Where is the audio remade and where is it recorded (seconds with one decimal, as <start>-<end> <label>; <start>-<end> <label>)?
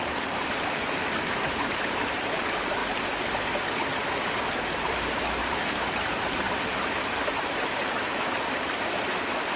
0.0-2.8 remade; 2.8-4.3 recorded; 4.3-9.6 remade